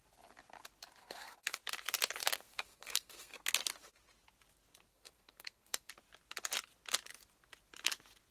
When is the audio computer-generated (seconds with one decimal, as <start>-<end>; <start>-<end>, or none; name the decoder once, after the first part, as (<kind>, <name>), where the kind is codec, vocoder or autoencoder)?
1.0-1.6 (codec, SNAC); 2.2-3.5; 4.9-5.9